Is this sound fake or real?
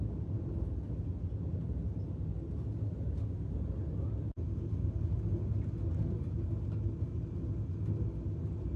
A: real